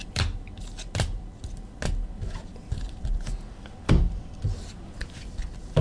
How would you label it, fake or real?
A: real